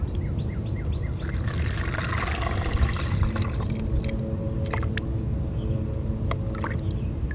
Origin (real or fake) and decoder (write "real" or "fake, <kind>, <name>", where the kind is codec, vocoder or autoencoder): real